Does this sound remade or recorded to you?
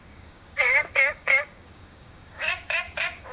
remade